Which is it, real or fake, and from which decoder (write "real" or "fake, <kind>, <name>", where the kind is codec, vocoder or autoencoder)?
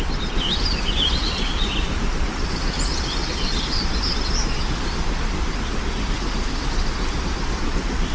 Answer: real